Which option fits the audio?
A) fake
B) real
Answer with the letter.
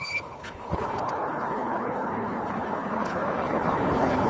A